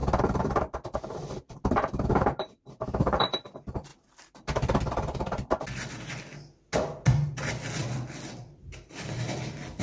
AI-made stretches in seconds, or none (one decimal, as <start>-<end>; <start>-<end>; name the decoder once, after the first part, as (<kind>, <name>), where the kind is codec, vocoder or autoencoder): 0.0-2.1 (vocoder, BigVGAN v2); 3.9-6.0; 7.8-9.2